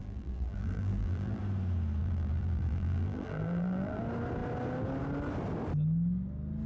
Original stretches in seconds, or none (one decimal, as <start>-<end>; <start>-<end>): 1.4-2.0; 4.0-6.7